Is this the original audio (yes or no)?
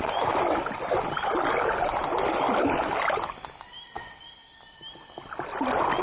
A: yes